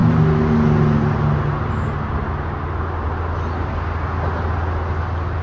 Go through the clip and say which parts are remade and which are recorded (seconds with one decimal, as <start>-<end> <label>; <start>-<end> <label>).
0.0-5.4 recorded